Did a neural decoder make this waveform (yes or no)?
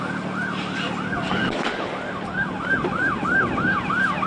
no